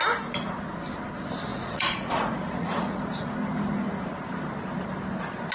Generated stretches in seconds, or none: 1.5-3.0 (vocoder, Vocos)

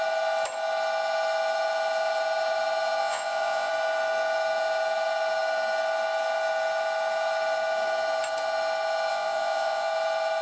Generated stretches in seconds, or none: 3.0-3.7 (vocoder, Vocos); 9.1-9.9

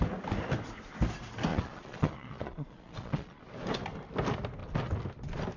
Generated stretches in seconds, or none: 1.5-3.4 (vocoder, Vocos)

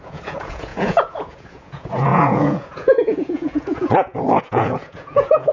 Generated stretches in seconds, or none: 0.0-5.5 (vocoder, Vocos)